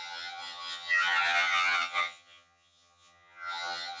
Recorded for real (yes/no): no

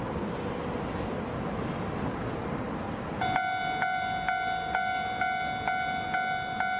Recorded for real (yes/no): yes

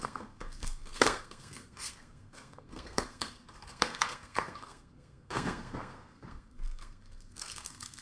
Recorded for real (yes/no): no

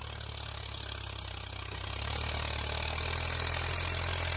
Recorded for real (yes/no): yes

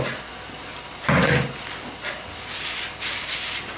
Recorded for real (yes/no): yes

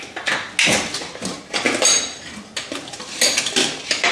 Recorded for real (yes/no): yes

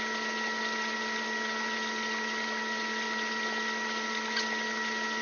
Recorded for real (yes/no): yes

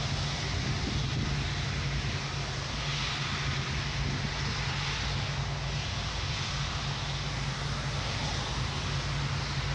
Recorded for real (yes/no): yes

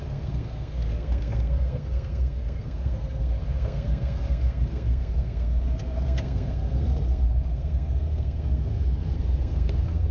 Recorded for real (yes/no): no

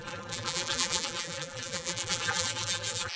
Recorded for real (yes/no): no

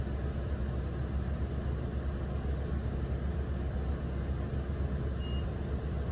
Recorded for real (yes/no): yes